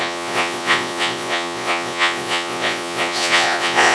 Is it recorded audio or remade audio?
remade